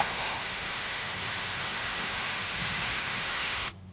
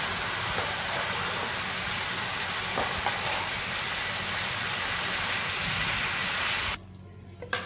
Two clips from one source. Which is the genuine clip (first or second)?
second